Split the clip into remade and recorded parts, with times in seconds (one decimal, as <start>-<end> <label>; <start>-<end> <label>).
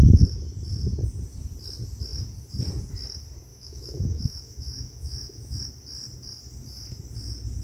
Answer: 0.0-3.5 recorded; 3.5-5.6 remade; 5.6-7.6 recorded